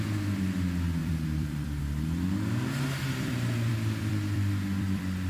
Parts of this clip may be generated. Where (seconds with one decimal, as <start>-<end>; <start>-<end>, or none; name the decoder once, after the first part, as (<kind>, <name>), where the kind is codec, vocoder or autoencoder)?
1.0-1.8 (vocoder, BigVGAN v2); 3.7-5.3